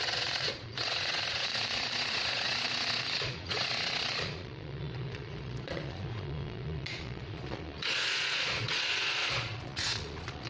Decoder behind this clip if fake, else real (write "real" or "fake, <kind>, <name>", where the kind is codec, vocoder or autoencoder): fake, vocoder, Vocos